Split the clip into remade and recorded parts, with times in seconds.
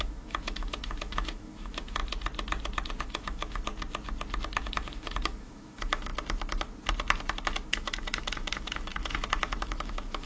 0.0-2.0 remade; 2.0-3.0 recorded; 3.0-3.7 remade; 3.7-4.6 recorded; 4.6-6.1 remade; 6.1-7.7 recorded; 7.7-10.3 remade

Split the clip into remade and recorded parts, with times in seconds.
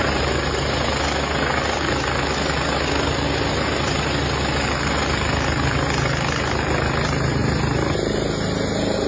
0.0-9.1 recorded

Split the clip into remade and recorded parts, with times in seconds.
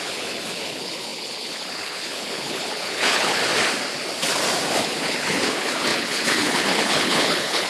0.0-3.4 remade; 3.4-4.8 recorded; 4.8-7.7 remade